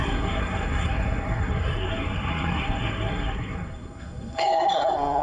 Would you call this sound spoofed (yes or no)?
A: yes